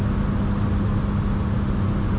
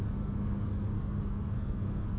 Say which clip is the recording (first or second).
first